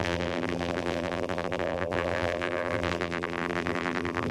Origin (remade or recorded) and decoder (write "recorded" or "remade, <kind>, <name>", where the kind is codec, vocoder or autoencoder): remade, vocoder, BigVGAN v2